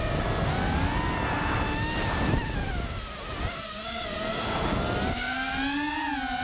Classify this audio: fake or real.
real